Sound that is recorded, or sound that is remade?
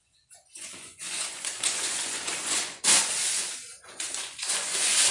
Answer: remade